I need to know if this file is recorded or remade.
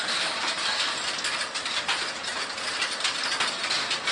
recorded